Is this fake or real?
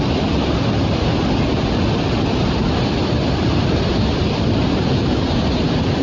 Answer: real